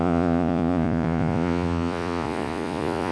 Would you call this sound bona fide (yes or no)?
no